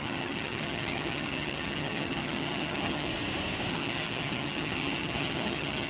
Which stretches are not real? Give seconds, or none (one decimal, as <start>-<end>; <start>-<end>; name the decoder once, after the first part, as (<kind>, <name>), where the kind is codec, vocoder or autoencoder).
0.0-3.1 (vocoder, HiFi-GAN); 3.7-5.9